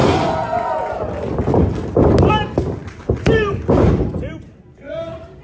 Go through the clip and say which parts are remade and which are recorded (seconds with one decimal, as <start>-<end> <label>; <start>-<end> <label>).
0.0-2.3 recorded; 2.3-5.4 remade